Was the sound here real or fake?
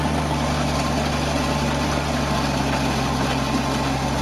real